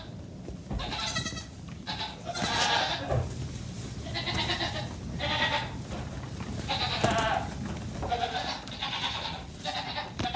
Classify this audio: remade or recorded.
recorded